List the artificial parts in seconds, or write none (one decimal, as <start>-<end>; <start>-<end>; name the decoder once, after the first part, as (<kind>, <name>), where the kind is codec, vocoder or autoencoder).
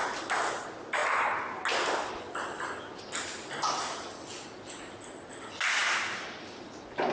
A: none